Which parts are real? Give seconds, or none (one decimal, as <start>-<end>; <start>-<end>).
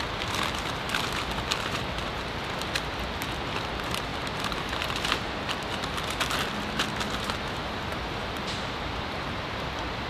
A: 4.1-7.7